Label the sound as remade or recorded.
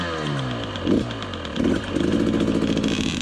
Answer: recorded